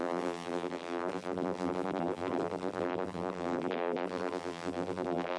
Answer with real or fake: fake